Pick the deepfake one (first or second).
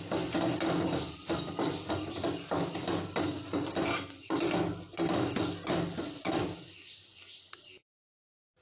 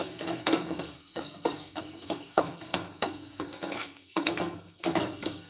second